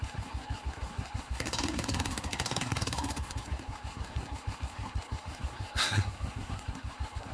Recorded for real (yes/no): no